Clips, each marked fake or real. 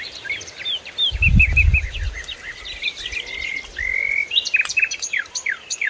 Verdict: real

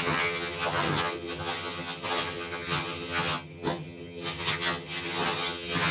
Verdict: fake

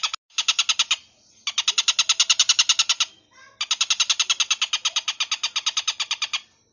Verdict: real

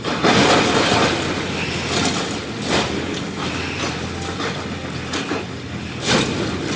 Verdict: real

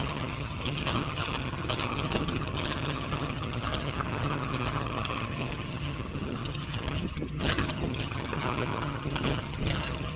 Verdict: fake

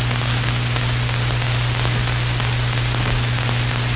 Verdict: real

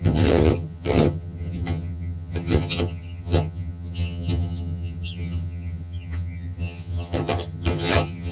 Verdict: fake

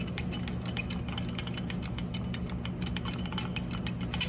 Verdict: real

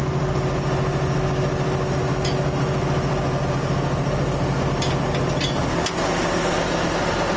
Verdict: real